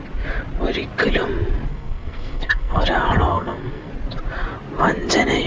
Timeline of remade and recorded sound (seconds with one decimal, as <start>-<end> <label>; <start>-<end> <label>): 0.0-1.7 recorded; 1.7-2.8 remade; 2.8-3.3 recorded; 3.3-3.9 remade; 3.9-5.5 recorded